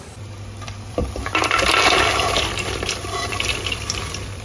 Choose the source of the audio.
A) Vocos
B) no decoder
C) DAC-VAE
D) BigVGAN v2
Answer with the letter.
D